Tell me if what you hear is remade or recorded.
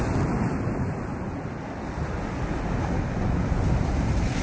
recorded